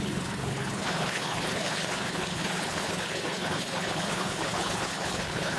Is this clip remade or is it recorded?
remade